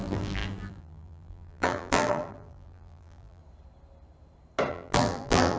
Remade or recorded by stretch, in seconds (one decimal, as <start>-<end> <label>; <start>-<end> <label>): 0.0-3.4 remade; 3.4-4.7 recorded; 4.7-5.6 remade